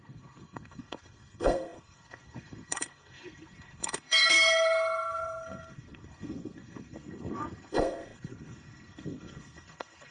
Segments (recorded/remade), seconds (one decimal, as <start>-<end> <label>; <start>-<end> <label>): 0.0-10.1 remade